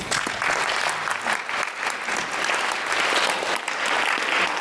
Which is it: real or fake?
real